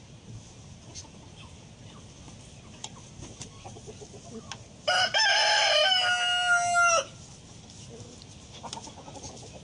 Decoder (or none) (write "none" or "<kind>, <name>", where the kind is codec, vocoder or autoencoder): none